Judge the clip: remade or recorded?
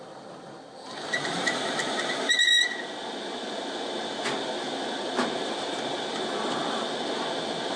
recorded